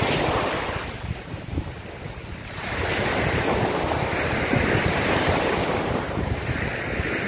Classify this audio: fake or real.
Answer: real